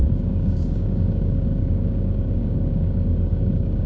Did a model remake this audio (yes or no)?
yes